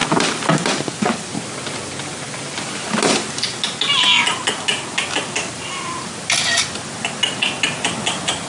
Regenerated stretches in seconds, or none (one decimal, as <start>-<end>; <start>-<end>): none